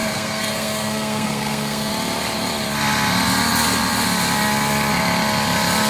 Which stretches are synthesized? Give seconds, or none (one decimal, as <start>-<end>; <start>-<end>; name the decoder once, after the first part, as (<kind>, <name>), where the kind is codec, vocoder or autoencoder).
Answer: 0.0-1.9 (codec, SNAC)